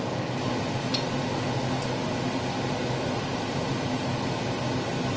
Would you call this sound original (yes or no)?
yes